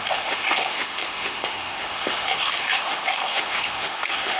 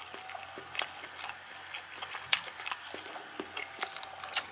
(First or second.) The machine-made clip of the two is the first